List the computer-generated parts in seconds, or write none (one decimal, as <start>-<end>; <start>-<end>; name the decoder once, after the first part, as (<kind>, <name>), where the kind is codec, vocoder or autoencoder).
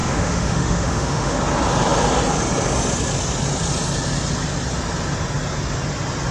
0.0-1.4 (autoencoder, DAC-VAE)